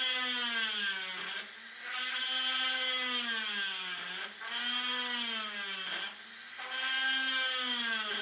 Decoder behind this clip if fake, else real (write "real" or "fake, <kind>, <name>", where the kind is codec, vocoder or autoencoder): real